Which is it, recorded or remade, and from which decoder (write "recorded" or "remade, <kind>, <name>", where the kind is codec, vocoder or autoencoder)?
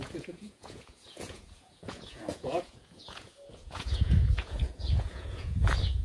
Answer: remade, vocoder, Vocos